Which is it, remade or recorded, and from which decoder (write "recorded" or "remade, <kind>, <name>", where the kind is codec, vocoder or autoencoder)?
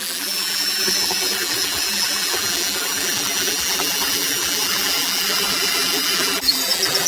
remade, vocoder, BigVGAN v2